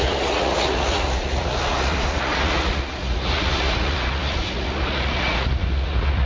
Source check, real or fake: fake